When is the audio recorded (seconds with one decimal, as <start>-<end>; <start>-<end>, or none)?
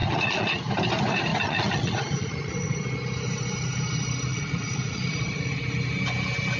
0.7-1.3; 2.8-4.3; 5.6-6.6